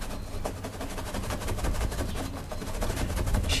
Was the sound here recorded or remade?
recorded